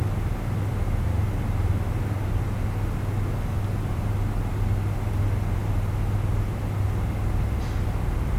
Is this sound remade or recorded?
recorded